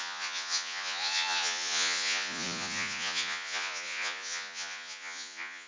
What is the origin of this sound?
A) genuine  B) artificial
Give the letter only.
B